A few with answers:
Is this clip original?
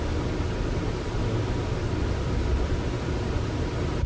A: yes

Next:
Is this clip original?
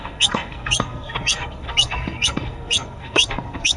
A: no